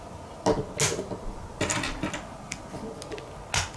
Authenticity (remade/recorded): recorded